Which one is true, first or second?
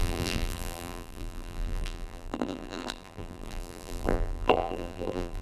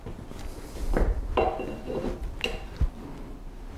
second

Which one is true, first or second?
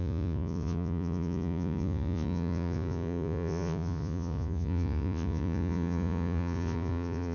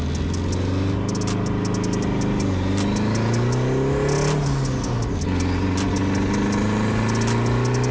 second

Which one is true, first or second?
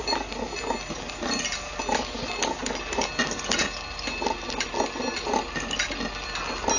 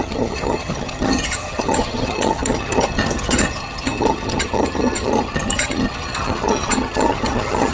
first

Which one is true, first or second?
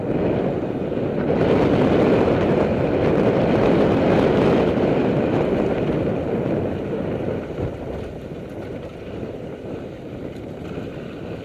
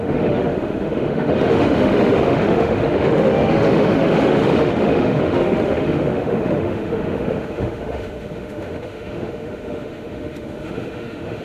first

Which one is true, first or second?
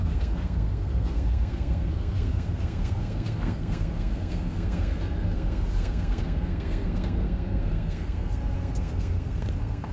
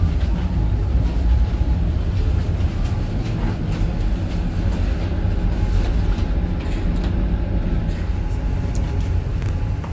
second